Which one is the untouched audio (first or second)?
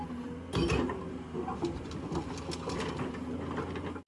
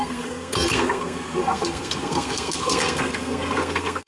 first